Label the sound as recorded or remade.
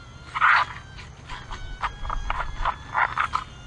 recorded